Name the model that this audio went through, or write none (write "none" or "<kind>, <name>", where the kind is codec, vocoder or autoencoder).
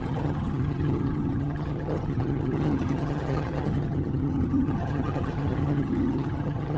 vocoder, HiFi-GAN